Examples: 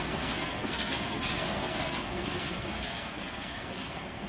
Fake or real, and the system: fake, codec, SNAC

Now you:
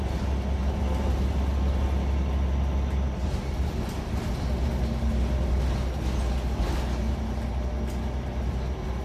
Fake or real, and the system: real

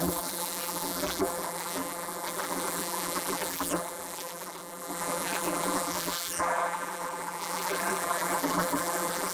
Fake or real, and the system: fake, vocoder, BigVGAN v2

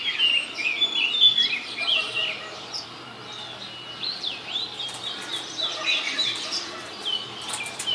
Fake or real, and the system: real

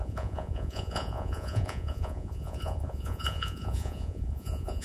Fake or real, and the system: fake, vocoder, Vocos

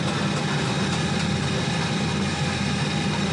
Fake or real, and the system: real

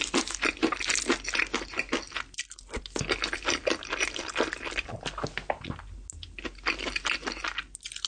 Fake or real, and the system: real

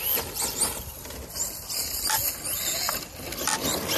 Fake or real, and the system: real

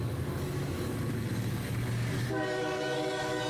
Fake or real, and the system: fake, codec, DAC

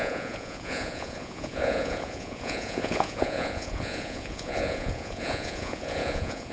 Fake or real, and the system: fake, vocoder, Vocos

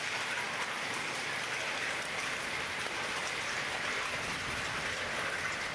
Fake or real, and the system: real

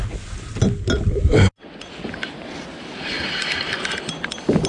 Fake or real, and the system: real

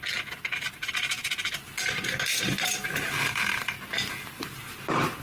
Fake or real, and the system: real